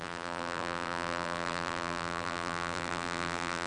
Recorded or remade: remade